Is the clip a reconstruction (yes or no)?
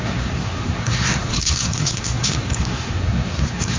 yes